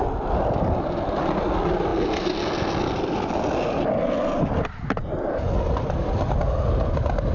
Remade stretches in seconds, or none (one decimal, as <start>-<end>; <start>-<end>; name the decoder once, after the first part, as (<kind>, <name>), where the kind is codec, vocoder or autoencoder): none